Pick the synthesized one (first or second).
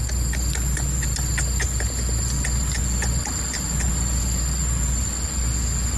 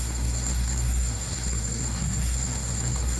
second